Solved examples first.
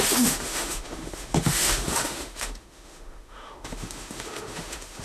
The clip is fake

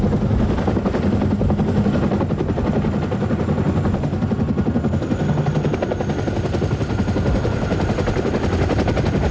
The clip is real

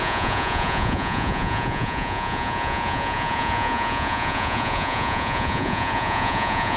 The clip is fake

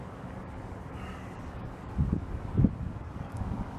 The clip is fake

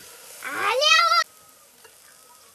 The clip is real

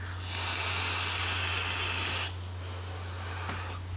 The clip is real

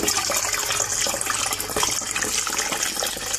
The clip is real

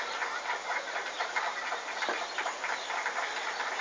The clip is real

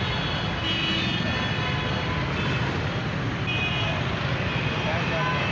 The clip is real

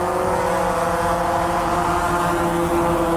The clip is real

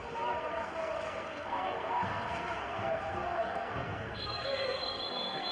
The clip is fake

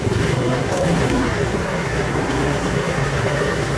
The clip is fake